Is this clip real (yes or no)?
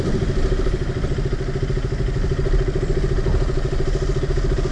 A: yes